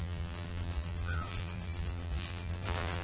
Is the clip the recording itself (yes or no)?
no